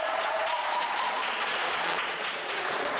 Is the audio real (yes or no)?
no